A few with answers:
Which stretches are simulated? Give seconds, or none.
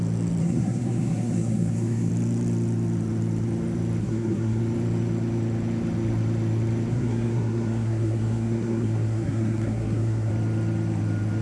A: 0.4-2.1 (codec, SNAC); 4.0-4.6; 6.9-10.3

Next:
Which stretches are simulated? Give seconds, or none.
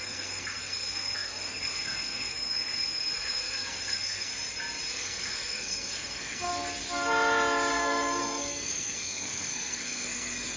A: 0.0-4.3 (codec, SNAC); 4.9-6.5; 7.7-10.6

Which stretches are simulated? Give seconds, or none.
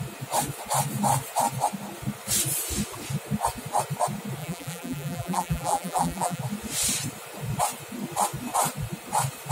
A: 4.4-6.4 (vocoder, BigVGAN v2)